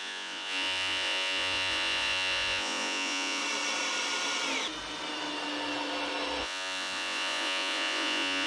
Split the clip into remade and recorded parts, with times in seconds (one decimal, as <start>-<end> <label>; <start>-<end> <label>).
0.0-3.4 remade; 3.4-6.4 recorded; 6.4-8.5 remade